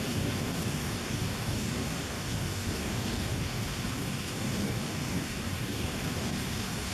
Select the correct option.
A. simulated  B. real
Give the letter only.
A